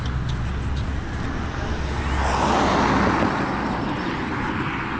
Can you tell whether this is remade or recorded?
recorded